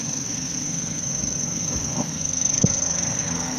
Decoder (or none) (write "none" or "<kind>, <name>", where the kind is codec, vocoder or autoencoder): codec, SNAC